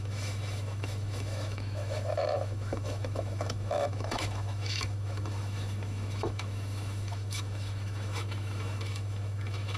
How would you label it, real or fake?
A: fake